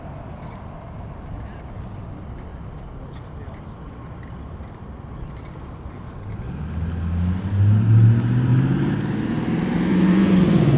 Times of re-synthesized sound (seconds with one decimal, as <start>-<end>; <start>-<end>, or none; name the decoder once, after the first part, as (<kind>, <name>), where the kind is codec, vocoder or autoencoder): 9.9-10.8 (vocoder, Vocos)